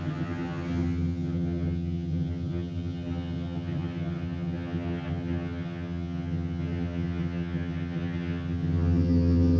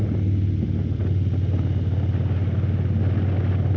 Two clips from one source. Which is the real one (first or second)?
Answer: second